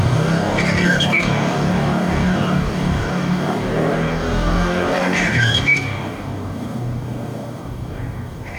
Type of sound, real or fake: fake